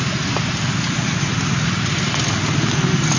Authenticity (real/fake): real